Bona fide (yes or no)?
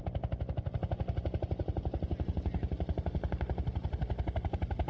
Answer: yes